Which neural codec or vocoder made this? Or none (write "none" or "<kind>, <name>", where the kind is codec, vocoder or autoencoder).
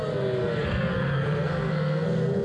codec, SNAC